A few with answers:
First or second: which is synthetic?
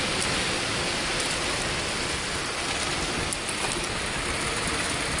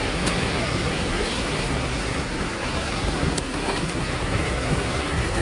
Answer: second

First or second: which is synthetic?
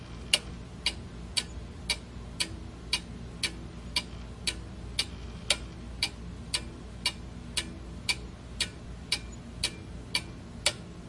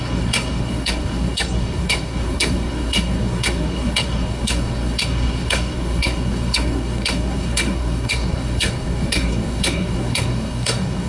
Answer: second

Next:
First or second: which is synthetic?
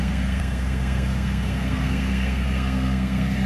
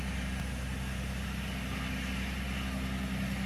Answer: first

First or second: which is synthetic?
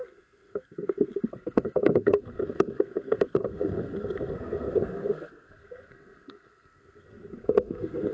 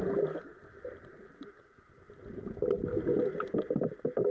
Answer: first